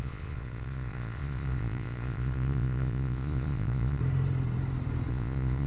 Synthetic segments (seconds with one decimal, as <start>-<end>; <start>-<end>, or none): 0.0-4.0; 5.1-5.7